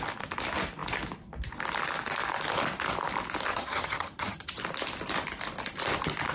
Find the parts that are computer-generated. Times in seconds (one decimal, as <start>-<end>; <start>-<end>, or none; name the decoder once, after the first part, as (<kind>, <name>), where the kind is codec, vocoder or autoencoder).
3.5-4.6 (vocoder, HiFi-GAN)